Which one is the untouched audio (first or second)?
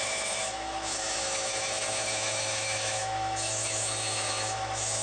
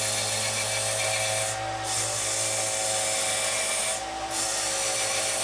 second